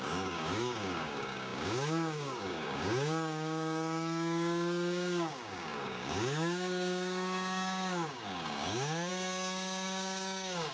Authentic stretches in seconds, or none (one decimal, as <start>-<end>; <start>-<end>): none